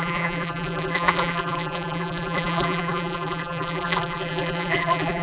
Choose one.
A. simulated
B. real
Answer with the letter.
A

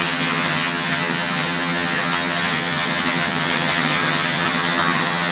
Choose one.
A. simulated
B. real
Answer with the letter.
A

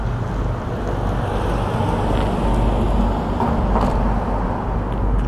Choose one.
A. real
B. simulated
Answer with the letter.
A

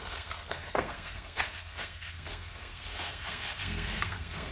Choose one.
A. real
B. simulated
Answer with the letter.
B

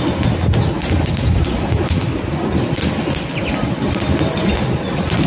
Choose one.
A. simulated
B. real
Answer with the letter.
B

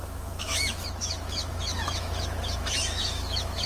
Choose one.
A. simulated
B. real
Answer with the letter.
A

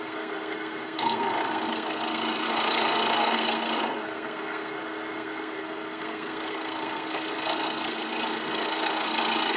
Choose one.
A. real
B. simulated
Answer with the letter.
B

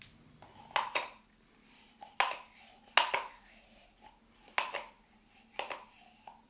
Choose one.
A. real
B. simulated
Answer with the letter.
A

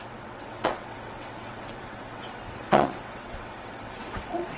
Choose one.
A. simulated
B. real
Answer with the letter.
A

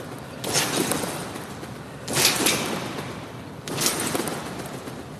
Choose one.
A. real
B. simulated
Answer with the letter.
B